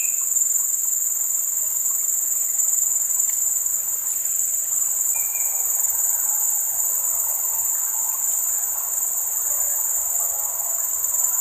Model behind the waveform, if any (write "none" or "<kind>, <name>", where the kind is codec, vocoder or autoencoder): vocoder, BigVGAN v2